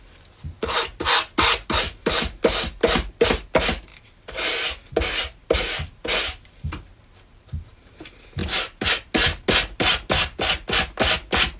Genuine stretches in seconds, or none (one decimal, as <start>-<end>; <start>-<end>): 0.0-11.6